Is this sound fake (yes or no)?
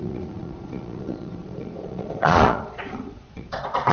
yes